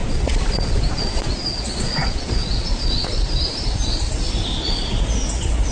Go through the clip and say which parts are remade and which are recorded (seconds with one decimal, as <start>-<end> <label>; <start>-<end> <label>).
0.0-3.4 remade; 3.4-4.5 recorded; 4.5-5.1 remade; 5.1-5.7 recorded